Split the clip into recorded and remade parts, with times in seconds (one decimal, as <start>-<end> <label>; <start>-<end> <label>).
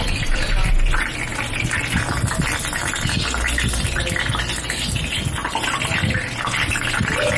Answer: 0.0-7.4 recorded